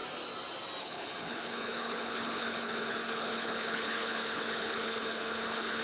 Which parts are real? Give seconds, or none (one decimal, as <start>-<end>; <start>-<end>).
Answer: 0.0-0.8